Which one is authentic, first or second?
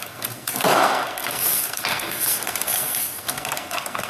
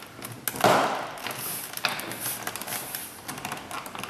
second